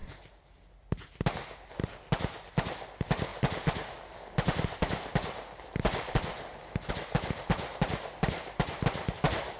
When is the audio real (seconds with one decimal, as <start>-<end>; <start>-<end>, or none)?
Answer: 0.7-3.3; 6.9-9.6